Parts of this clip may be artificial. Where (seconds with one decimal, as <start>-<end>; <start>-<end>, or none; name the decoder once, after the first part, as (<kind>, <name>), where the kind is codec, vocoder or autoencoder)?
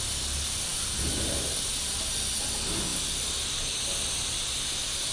none